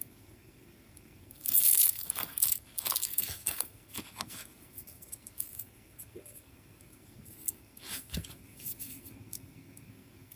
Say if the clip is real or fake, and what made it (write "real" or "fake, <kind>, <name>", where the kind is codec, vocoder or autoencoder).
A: fake, codec, SNAC